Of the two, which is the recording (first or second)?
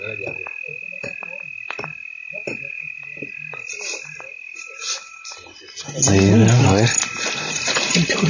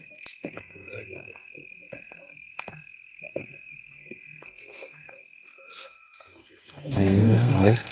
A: first